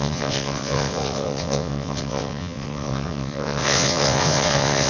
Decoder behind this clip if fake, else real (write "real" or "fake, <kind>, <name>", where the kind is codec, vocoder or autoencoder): fake, vocoder, WaveNeXt